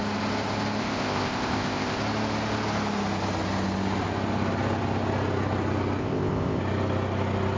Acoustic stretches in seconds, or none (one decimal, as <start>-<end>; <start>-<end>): 0.0-0.8; 2.0-6.0; 6.6-7.6